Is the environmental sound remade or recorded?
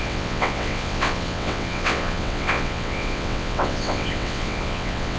remade